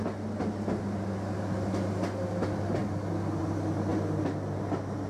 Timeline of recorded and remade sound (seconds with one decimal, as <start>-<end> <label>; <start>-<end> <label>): 0.0-5.1 recorded